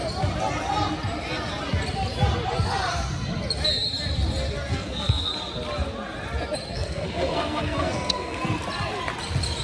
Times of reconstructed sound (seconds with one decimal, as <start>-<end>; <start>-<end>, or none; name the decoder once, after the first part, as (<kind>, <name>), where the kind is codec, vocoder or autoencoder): 4.7-5.3 (codec, SNAC); 6.7-8.4

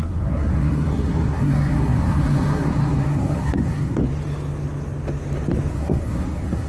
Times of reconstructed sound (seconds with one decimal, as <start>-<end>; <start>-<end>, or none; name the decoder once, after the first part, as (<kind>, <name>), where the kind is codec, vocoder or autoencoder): 0.0-4.0 (codec, SNAC); 5.7-6.7